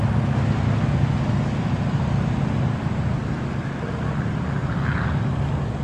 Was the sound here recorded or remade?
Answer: recorded